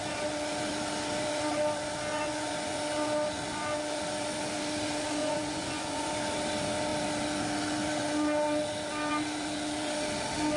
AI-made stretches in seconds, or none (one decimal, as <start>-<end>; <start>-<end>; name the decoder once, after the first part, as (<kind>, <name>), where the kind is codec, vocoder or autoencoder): 2.1-2.8 (vocoder, Vocos); 5.2-6.1